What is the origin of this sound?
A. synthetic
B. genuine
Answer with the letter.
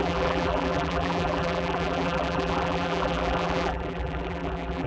A